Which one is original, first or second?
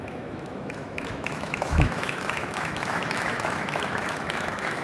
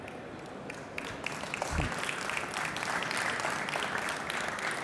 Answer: second